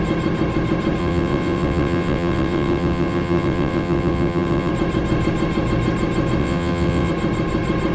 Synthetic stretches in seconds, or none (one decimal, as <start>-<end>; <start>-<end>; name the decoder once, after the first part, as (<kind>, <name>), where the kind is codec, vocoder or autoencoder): 1.0-4.7 (vocoder, WaveNeXt); 6.4-7.1